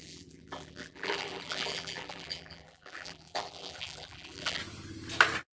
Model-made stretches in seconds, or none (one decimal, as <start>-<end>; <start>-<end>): 0.0-4.6